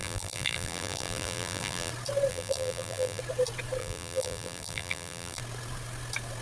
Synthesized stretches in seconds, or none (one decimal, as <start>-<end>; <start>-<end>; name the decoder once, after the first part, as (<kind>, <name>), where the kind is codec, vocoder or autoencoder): 0.0-1.9 (vocoder, BigVGAN v2); 2.3-3.2; 3.8-5.4

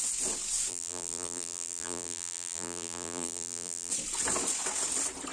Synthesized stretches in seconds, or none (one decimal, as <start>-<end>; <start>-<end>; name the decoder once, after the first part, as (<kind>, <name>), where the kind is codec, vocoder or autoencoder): 0.7-3.9 (vocoder, BigVGAN v2)

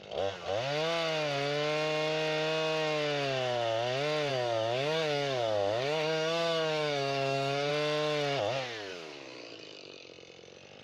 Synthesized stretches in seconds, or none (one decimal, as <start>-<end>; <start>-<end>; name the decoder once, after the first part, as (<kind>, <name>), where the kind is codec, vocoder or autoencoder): 4.3-7.7 (codec, DAC); 8.9-10.1